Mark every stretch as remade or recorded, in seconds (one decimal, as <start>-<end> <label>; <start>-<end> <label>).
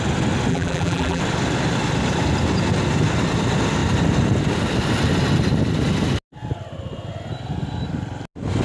0.0-0.5 recorded; 0.5-1.2 remade; 1.2-8.6 recorded